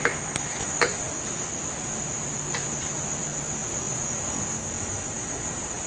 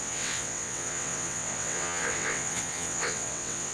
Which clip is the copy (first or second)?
second